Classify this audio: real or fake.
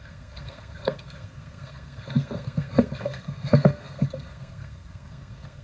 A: fake